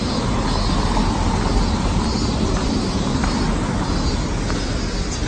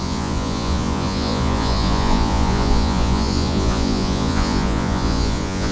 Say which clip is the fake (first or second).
second